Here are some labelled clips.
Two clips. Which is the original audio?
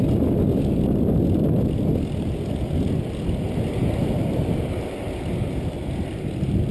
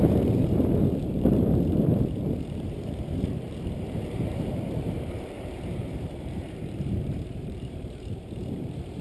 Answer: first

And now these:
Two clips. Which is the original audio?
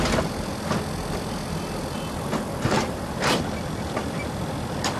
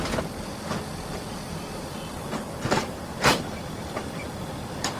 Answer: first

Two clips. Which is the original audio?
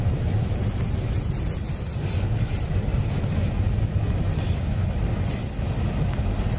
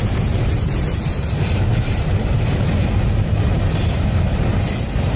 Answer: first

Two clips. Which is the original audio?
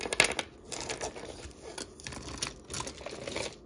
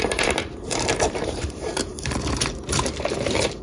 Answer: first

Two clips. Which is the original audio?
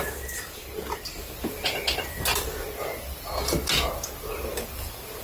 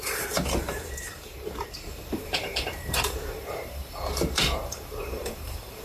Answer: first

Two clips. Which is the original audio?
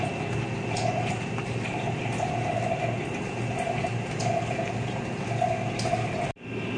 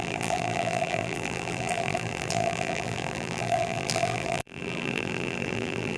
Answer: first